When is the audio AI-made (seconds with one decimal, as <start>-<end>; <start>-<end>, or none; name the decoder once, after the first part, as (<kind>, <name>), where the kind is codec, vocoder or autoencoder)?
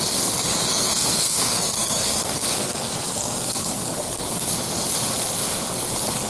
0.7-4.5 (codec, SNAC)